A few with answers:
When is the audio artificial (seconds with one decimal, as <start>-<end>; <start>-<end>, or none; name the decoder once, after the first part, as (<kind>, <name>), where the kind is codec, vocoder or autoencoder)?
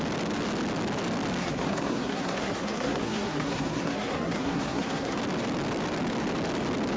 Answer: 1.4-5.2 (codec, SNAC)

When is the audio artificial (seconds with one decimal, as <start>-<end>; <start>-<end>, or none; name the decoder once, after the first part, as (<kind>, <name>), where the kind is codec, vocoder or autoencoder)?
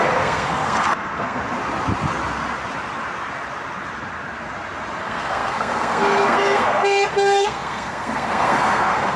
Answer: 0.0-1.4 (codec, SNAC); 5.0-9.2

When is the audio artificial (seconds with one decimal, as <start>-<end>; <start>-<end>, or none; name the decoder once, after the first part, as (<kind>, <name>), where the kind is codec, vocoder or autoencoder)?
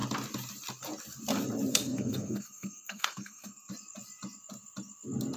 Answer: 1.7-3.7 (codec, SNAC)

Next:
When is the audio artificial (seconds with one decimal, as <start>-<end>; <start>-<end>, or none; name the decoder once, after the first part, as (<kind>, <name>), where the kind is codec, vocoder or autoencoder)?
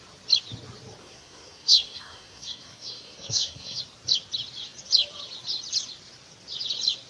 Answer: 1.0-3.8 (codec, SNAC)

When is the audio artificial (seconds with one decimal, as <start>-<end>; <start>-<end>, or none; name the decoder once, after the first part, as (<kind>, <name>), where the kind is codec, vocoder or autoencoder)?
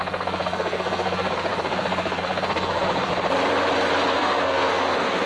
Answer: 0.0-3.1 (codec, SNAC); 4.1-5.3